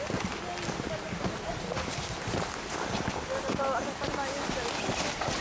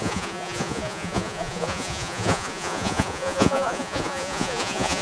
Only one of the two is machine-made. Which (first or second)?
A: second